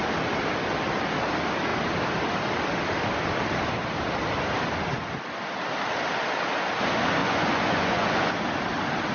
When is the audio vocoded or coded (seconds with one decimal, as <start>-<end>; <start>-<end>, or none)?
7.2-8.3